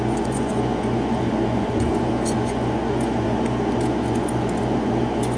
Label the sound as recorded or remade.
remade